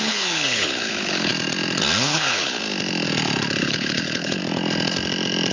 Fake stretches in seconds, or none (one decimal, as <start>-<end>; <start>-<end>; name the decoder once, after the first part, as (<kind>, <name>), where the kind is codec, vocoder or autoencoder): 0.0-1.3 (codec, HILCodec); 2.0-2.6; 3.6-4.4